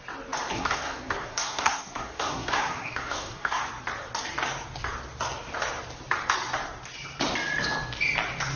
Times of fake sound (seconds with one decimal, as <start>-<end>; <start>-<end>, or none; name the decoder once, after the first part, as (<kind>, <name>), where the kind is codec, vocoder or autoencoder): 0.5-3.6 (codec, SNAC)